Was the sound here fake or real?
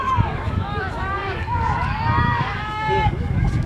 fake